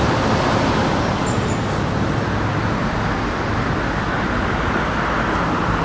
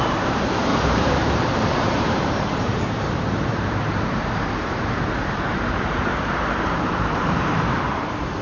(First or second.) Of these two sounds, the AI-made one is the second